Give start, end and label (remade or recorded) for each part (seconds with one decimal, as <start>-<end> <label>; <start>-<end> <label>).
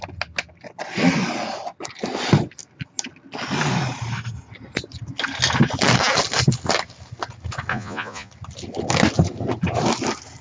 0.0-7.7 recorded; 7.7-8.3 remade; 8.3-10.4 recorded